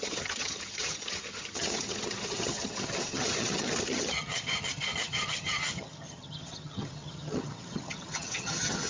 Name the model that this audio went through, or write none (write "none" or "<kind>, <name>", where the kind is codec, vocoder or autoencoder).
vocoder, HiFi-GAN